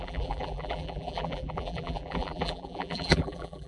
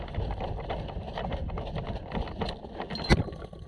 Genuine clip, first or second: second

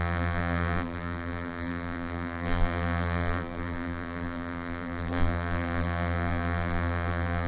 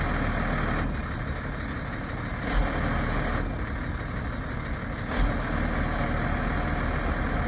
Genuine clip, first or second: second